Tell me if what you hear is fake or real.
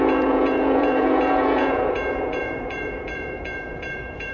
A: fake